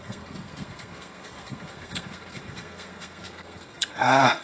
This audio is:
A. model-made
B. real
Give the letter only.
A